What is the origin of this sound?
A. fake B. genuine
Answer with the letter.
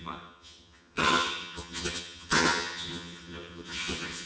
A